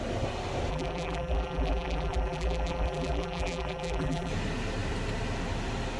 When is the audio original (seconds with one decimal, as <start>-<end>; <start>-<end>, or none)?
0.0-0.7; 4.3-6.0

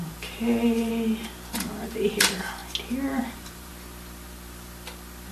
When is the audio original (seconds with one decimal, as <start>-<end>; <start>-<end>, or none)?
0.9-1.5; 2.6-3.1; 3.7-5.3

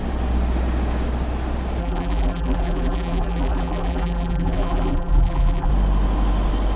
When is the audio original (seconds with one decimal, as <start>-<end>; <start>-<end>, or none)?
0.0-1.8; 5.7-6.8